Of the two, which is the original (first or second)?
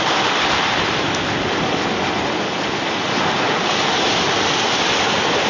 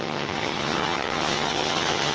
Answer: first